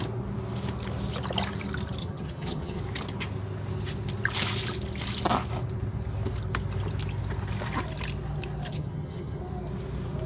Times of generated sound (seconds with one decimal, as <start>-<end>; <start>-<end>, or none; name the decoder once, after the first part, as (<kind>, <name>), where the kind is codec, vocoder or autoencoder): 2.0-2.8 (vocoder, HiFi-GAN); 8.7-9.4

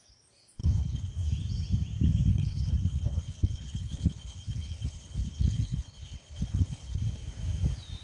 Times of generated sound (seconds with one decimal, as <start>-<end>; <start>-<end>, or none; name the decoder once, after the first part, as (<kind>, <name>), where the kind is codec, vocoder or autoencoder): 0.6-1.1 (codec, HILCodec); 2.3-7.0